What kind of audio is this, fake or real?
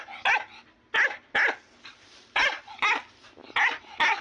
real